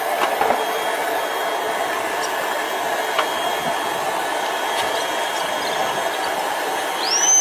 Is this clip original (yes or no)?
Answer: yes